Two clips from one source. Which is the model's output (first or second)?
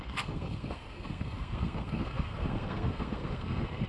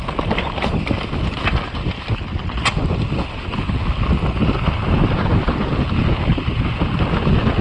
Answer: first